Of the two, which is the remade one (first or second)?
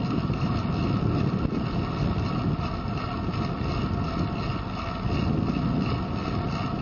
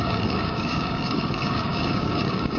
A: second